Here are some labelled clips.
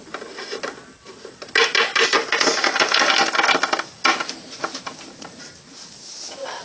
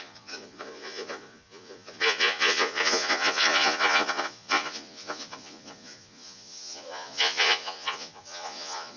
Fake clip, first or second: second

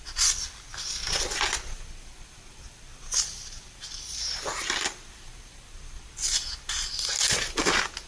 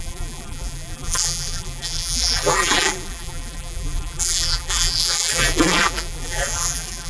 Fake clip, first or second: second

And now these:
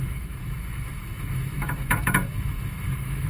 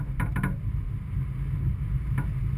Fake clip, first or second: first